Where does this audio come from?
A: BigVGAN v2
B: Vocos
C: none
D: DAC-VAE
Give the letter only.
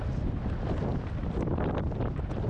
C